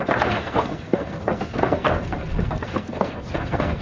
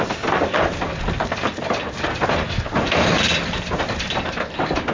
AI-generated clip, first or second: first